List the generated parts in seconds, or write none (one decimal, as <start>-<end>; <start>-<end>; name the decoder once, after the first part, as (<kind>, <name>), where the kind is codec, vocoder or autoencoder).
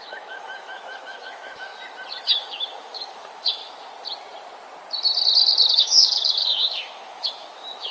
0.0-1.7 (autoencoder, DAC-VAE); 2.2-3.6; 5.7-7.9